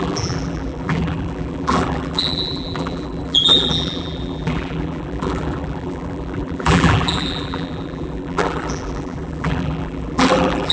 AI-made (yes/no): yes